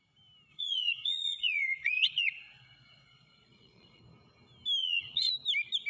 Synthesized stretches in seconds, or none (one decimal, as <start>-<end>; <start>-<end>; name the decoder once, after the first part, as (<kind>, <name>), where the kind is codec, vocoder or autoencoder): 0.5-4.0 (vocoder, Vocos); 4.8-5.3